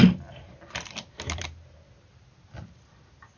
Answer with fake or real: real